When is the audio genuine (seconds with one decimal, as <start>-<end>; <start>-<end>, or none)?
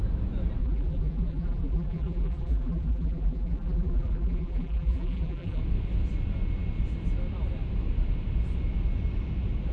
0.0-0.6; 5.6-9.7